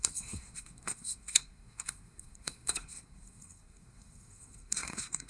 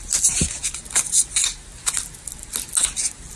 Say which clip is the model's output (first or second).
first